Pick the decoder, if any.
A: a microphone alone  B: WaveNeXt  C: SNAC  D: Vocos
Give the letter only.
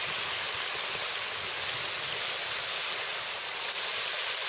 A